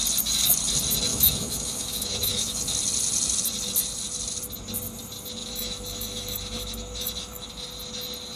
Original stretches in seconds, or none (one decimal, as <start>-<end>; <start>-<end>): 0.0-1.1; 2.6-5.4; 7.5-8.4